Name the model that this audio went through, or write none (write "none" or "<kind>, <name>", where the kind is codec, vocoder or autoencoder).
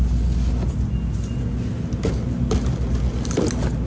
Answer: none